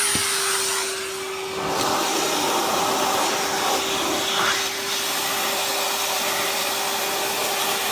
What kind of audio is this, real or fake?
real